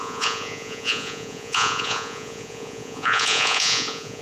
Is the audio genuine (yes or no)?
no